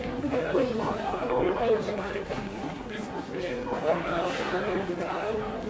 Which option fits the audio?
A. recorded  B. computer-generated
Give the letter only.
B